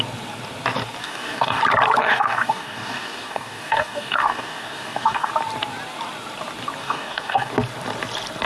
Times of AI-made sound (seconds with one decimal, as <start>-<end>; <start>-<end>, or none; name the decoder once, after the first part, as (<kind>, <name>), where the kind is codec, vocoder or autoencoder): 1.0-1.6 (codec, DAC); 2.0-5.3; 6.8-7.5